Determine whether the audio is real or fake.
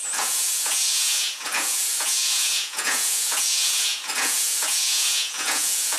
fake